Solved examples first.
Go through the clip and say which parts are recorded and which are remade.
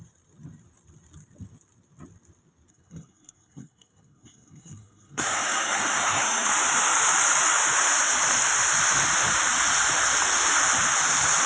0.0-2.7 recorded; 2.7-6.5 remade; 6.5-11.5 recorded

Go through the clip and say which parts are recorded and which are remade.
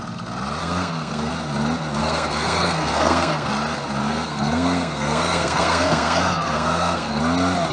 0.0-0.6 recorded; 0.6-1.3 remade; 1.3-2.0 recorded; 2.0-3.5 remade; 3.5-4.0 recorded; 4.0-7.2 remade; 7.2-7.7 recorded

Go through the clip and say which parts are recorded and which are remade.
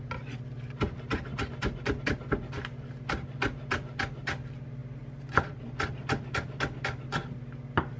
0.0-8.0 recorded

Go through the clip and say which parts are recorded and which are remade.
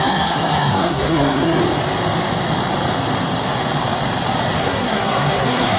0.0-1.6 remade; 1.6-4.6 recorded; 4.6-5.8 remade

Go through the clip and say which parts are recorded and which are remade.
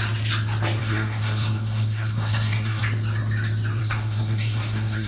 0.0-0.8 recorded; 0.8-2.8 remade; 2.8-3.8 recorded; 3.8-5.1 remade